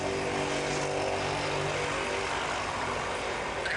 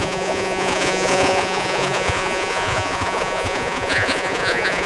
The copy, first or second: second